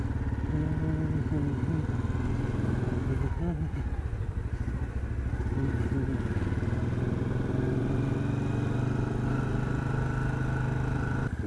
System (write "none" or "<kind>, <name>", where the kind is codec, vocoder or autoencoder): none